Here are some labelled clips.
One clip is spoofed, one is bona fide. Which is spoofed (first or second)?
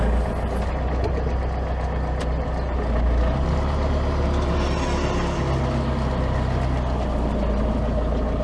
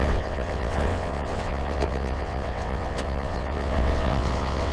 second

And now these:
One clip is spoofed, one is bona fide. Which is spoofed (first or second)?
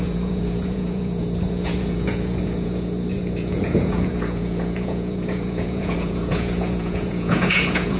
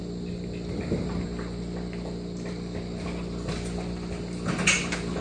first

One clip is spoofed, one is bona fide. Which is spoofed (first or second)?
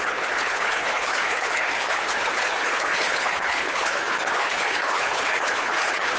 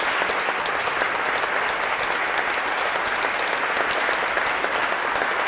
first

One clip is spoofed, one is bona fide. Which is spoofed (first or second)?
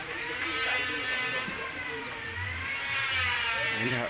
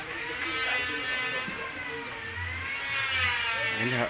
first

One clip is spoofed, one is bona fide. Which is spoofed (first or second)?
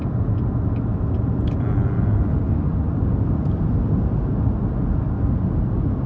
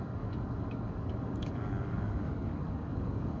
second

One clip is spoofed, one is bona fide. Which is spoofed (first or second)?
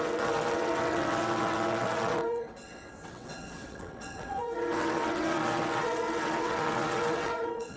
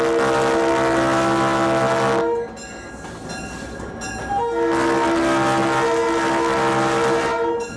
first